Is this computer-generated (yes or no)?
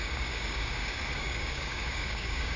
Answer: yes